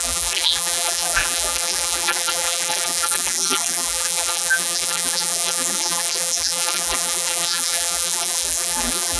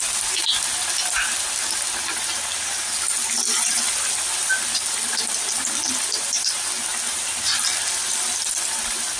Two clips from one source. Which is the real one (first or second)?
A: second